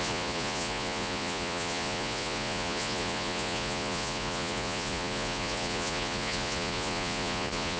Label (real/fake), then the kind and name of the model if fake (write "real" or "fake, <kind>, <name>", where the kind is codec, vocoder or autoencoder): fake, vocoder, Vocos